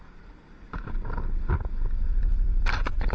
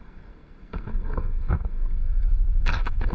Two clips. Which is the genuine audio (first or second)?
first